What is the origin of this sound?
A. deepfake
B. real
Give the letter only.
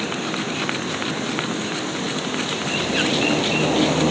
B